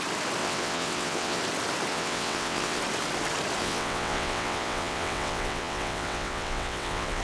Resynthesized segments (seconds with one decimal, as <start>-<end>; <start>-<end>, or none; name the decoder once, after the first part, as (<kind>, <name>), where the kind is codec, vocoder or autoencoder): 0.4-1.4 (vocoder, WaveNeXt); 1.9-2.8; 3.6-7.2